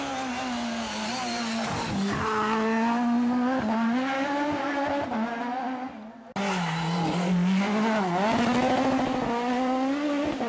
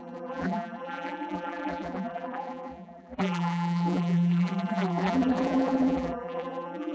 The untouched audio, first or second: first